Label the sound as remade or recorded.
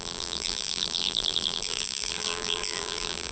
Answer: remade